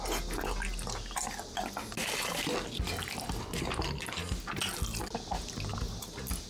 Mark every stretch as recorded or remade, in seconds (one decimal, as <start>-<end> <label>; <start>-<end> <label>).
0.0-6.5 recorded